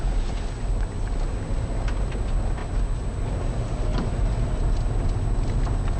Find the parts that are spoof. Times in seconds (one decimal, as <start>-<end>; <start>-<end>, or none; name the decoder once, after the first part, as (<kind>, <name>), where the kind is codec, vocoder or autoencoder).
none